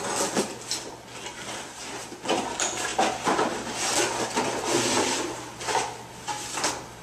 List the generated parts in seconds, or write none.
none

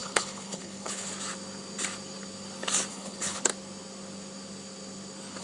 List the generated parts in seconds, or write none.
0.0-1.1 (codec, HILCodec); 2.9-3.5

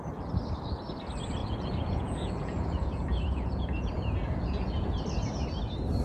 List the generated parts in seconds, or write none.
1.4-5.0 (vocoder, Vocos)

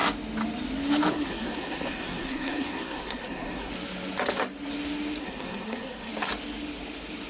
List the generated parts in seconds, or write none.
1.1-3.7 (codec, SNAC); 5.2-6.1

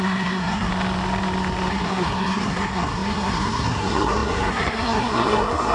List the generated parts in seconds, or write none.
0.0-0.7 (codec, SNAC); 1.7-5.7

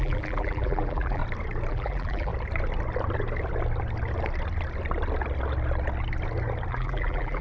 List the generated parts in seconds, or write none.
0.0-1.2 (vocoder, BigVGAN v2); 1.7-2.3; 6.7-7.4